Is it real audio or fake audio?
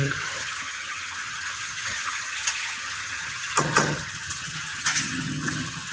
fake